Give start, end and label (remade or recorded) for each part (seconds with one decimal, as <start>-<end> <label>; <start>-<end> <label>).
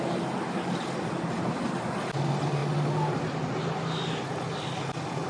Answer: 0.0-5.3 recorded